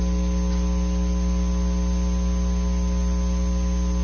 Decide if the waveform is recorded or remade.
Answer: recorded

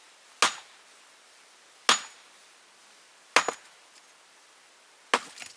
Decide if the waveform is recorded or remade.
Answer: recorded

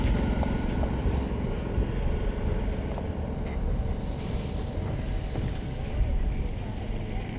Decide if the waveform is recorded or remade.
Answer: recorded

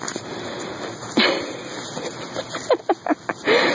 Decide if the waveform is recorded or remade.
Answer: recorded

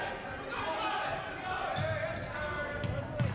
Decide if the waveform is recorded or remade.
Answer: recorded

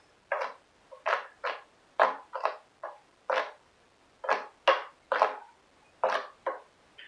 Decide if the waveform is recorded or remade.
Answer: recorded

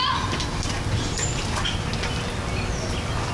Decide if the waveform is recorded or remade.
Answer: recorded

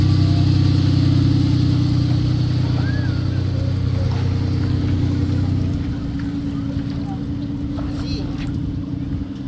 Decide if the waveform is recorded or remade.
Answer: recorded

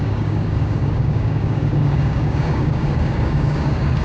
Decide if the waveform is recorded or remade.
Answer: remade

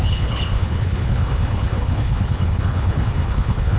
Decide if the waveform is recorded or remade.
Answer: remade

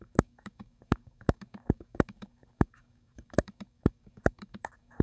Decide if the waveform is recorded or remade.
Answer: remade